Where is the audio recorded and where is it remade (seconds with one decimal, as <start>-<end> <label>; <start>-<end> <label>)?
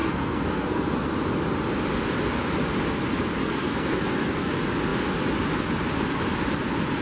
0.0-1.1 remade; 1.1-3.4 recorded; 3.4-4.5 remade; 4.5-7.0 recorded